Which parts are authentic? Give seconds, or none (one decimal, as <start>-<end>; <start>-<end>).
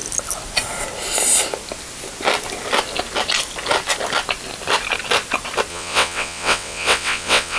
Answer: 0.0-5.7